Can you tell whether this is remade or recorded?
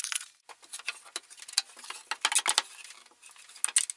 recorded